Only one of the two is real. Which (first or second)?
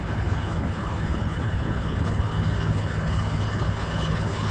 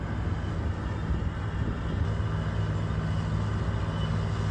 second